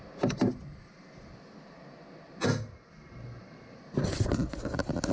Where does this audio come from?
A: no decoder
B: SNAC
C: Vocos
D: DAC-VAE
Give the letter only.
A